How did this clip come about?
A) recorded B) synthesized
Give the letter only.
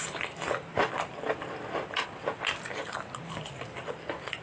A